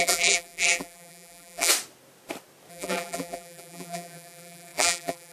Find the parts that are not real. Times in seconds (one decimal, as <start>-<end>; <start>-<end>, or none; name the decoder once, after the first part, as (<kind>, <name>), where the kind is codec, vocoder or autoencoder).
0.0-1.7 (vocoder, BigVGAN v2); 2.7-5.3